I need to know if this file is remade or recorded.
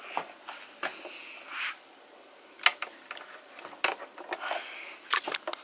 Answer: recorded